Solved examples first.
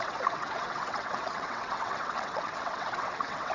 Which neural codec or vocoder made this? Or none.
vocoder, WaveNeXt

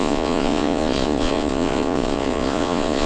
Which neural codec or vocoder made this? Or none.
vocoder, Vocos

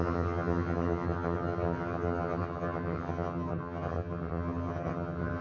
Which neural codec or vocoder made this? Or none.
vocoder, HiFi-GAN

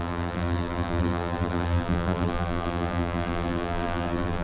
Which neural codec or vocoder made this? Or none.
vocoder, BigVGAN v2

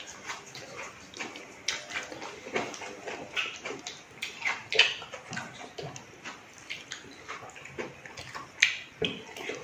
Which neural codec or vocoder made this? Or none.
none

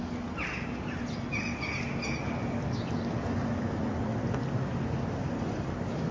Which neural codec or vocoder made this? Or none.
none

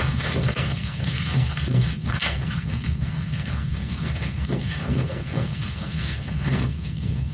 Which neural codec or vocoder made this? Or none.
codec, SNAC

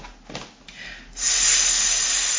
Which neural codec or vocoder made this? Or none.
none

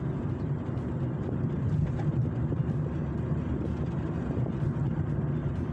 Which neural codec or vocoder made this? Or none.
none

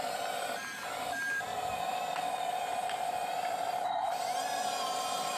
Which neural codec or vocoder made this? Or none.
vocoder, BigVGAN v2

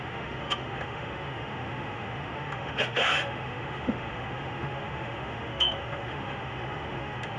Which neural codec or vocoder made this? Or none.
autoencoder, DAC-VAE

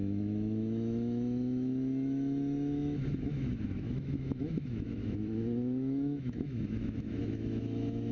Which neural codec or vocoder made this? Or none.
autoencoder, DAC-VAE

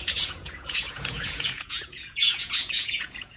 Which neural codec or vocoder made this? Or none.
vocoder, Vocos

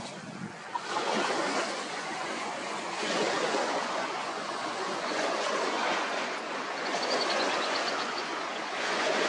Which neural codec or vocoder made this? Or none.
vocoder, Vocos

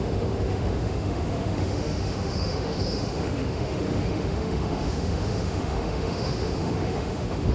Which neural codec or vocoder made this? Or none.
autoencoder, DAC-VAE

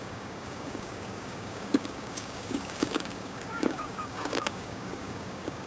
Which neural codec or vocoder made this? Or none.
codec, DAC